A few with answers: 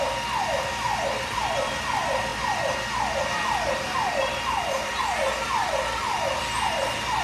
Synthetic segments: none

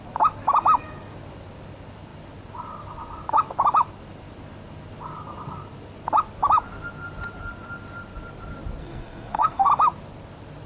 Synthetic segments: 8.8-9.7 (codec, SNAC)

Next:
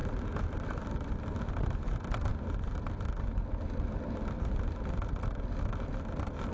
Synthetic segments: none

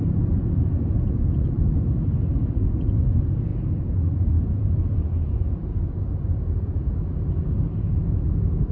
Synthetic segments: 0.0-8.7 (vocoder, Vocos)